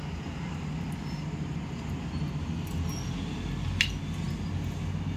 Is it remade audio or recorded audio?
recorded